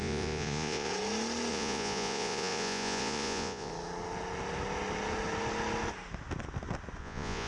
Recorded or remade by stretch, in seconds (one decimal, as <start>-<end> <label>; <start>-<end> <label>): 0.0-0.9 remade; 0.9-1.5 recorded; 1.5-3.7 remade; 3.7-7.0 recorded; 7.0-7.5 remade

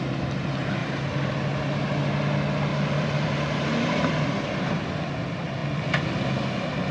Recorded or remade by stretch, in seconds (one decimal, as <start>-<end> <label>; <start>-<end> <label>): 0.0-0.8 recorded; 0.8-1.3 remade; 1.3-2.7 recorded; 2.7-4.8 remade; 4.8-6.9 recorded

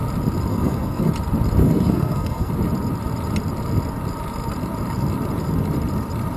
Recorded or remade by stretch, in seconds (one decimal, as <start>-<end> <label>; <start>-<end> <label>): 0.0-0.5 recorded; 0.5-1.1 remade; 1.1-1.6 recorded; 1.6-2.5 remade; 2.5-6.4 recorded

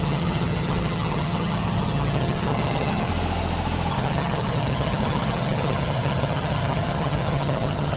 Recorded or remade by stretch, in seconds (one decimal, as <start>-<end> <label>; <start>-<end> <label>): 0.0-3.1 remade; 3.1-3.9 recorded; 3.9-8.0 remade

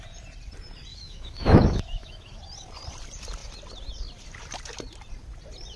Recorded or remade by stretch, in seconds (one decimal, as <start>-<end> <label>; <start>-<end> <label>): 0.0-0.9 recorded; 0.9-2.4 remade; 2.4-5.8 recorded

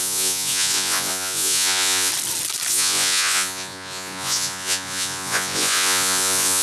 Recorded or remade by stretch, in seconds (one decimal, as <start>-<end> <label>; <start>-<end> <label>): 0.0-2.1 remade; 2.1-2.7 recorded; 2.7-6.6 remade

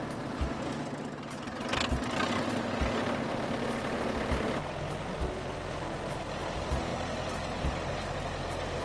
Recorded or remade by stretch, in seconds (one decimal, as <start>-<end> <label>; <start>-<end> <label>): 0.0-8.8 recorded